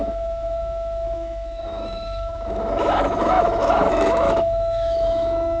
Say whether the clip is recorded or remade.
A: remade